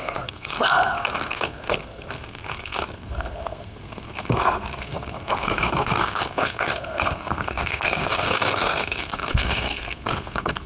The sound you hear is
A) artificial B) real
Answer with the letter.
A